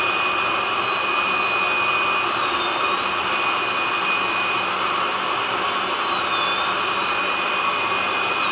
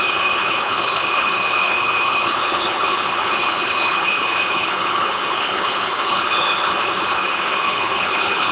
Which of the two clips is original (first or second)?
first